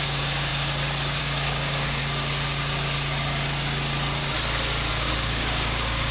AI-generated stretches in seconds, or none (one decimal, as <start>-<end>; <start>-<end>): 0.0-0.5; 1.2-2.0; 4.9-6.1